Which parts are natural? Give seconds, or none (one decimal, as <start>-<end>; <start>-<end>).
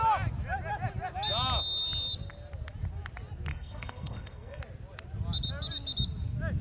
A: 0.0-3.5; 4.6-6.6